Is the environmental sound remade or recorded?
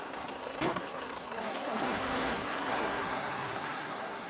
remade